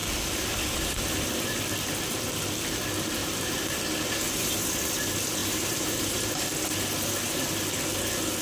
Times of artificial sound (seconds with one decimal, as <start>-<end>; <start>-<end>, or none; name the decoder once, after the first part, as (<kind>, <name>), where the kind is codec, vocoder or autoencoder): 3.2-4.6 (vocoder, BigVGAN v2); 5.4-6.3